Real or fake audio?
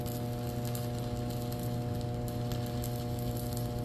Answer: real